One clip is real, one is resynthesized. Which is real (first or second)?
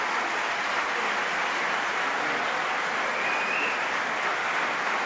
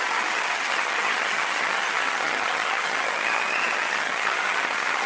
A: first